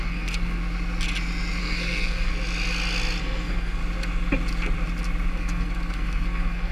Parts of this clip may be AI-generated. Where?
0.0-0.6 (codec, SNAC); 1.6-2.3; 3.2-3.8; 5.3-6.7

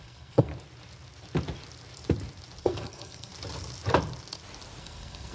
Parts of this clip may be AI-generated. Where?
0.0-0.5 (codec, SNAC); 2.6-3.3; 4.8-5.3

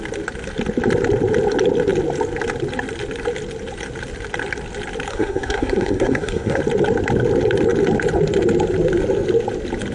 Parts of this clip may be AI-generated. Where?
5.1-6.6 (codec, SNAC)